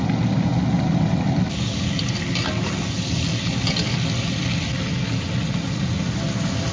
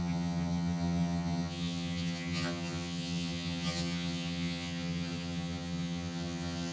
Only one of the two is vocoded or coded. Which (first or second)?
second